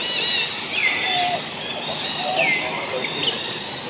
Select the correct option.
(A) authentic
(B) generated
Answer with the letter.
A